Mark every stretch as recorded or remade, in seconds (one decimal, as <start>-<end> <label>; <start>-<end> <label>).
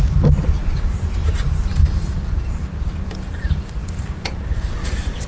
0.0-0.6 recorded; 0.6-1.1 remade; 1.1-1.8 recorded; 1.8-5.3 remade